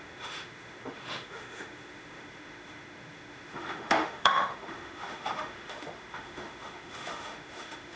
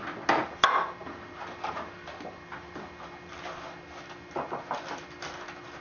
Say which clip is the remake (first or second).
first